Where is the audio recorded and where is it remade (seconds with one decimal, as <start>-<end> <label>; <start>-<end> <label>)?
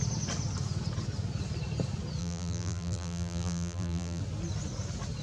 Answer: 0.0-2.2 recorded; 2.2-4.2 remade; 4.2-5.2 recorded